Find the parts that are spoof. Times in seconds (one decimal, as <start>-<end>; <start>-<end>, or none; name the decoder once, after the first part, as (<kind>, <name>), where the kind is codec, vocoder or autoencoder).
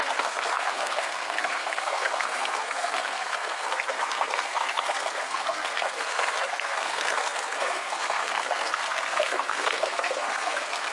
0.0-10.9 (codec, SNAC)